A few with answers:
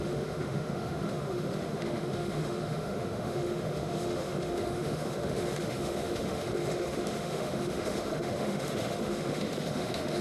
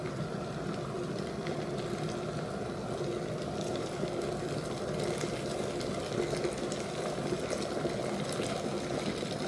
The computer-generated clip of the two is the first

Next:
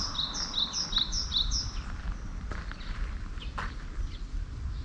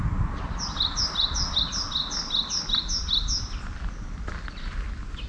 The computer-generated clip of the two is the first